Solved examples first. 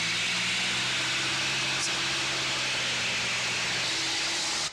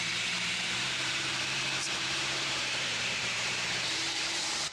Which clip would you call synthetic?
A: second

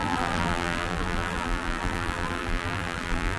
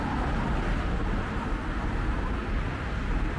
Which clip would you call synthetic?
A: first